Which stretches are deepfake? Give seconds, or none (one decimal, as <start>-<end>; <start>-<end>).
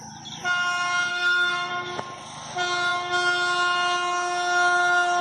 1.1-1.7